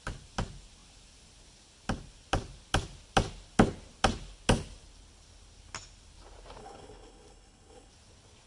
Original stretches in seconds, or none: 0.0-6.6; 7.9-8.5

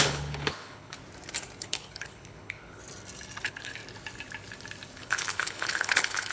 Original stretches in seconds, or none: 1.0-1.6; 2.8-3.4; 3.8-5.0

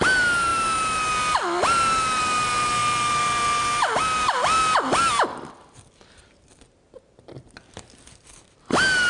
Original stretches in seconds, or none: 0.0-9.1

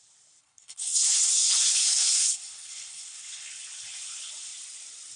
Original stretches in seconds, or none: 0.0-0.4; 3.5-5.2

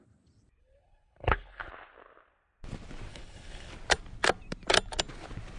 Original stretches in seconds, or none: 0.0-0.6; 1.7-3.1; 3.7-5.6

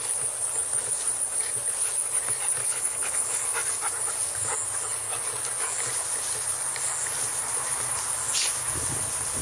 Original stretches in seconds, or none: 0.0-2.6; 3.4-9.4

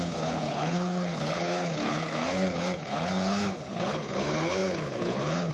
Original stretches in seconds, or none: none